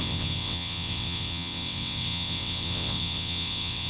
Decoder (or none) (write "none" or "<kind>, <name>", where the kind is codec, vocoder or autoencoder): vocoder, WaveNeXt